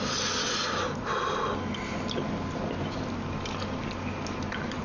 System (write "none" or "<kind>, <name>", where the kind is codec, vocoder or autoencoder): none